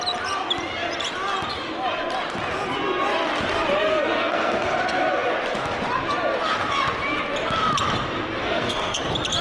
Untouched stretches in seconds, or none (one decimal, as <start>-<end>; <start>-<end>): 0.0-3.9; 4.8-8.4; 9.0-9.4